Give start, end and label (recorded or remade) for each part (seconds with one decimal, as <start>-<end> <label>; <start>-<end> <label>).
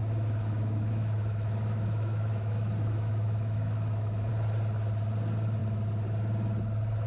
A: 0.0-4.3 remade; 4.3-7.1 recorded